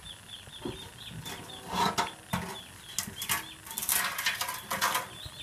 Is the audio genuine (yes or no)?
yes